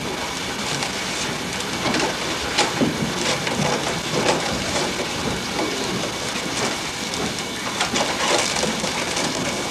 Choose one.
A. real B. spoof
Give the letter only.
A